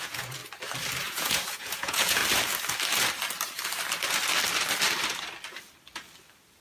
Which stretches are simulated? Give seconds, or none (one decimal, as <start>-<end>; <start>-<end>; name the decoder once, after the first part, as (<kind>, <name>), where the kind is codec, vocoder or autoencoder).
0.0-0.4 (vocoder, Vocos); 1.0-2.2